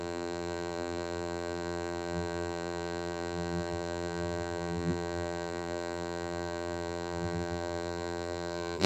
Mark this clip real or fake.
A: fake